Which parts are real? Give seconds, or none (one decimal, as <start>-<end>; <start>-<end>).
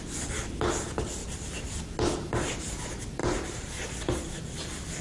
0.0-1.2; 1.7-3.2; 3.9-5.0